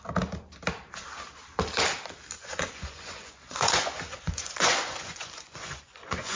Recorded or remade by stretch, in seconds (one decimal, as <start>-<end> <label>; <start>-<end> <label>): 0.0-2.4 recorded; 2.4-6.4 remade